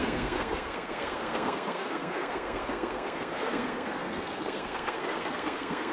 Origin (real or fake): fake